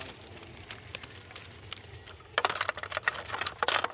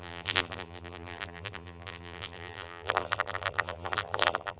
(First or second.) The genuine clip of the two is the first